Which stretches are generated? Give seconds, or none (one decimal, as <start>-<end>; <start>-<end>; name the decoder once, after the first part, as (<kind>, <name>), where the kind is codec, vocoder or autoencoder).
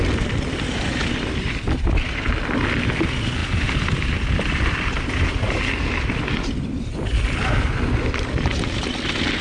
none